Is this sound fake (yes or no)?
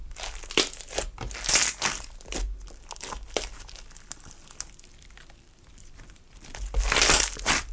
no